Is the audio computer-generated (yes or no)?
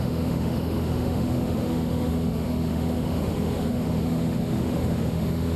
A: yes